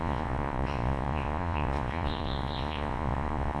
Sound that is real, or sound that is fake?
fake